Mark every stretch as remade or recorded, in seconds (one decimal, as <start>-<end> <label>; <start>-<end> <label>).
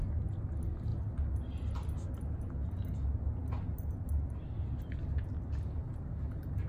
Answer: 0.0-6.7 recorded